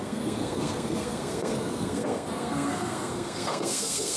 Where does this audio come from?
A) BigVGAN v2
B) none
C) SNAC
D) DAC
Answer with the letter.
C